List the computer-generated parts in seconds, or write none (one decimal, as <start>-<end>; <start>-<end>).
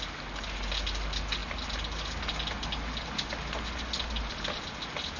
none